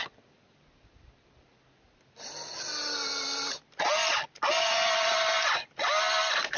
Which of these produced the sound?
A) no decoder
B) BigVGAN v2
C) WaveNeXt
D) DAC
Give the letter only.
A